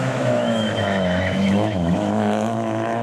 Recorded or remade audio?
remade